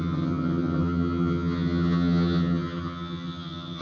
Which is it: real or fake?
fake